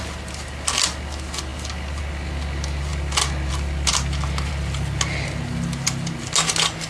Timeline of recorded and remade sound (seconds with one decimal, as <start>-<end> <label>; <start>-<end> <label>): 0.0-6.9 recorded